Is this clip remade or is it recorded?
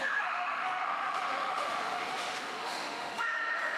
remade